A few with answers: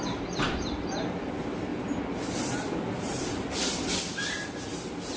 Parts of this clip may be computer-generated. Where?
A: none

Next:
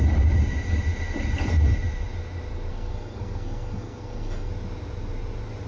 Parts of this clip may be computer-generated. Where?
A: 2.7-4.5 (codec, SNAC)

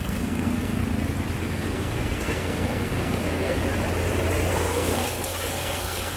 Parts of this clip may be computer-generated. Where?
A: 0.0-0.8 (codec, SNAC); 1.4-3.6; 4.5-6.2

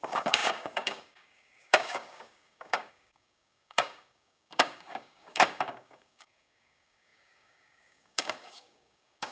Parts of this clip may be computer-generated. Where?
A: 0.0-9.3 (codec, DAC)

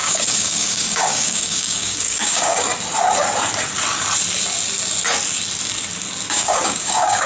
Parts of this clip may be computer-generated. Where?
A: 0.0-2.7 (codec, DAC); 6.3-7.3

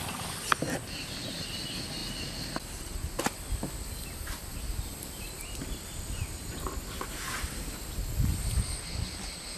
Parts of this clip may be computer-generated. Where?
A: none